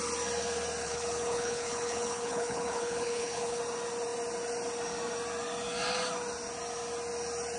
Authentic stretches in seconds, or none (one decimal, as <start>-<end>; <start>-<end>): 0.0-0.8; 3.6-7.6